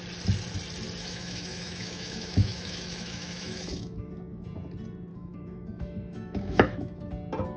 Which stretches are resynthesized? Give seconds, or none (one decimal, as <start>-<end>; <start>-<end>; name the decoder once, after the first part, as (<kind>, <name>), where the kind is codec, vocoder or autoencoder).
1.0-4.1 (autoencoder, DAC-VAE); 5.1-7.1